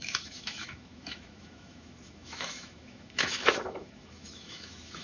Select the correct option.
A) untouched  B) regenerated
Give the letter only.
B